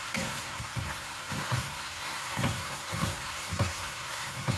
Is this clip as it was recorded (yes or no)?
no